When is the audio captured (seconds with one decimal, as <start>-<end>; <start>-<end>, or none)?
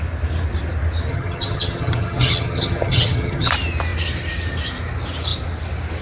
0.0-1.1; 3.5-6.0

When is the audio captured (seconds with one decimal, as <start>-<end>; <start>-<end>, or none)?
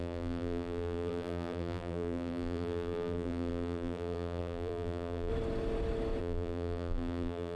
5.3-6.2